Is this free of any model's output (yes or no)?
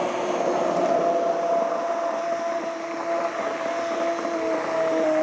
yes